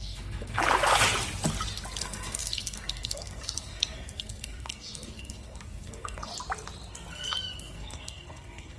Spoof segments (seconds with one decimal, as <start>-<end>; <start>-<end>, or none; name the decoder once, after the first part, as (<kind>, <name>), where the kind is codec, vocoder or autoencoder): 0.0-0.6 (codec, SNAC); 2.0-6.3; 7.1-8.8